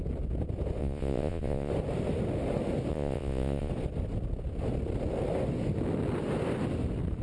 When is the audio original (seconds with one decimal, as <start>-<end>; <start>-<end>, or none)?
0.0-0.8; 1.7-2.9; 3.7-7.2